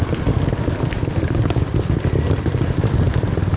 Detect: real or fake real